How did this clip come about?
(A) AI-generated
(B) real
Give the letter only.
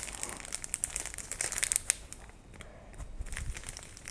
B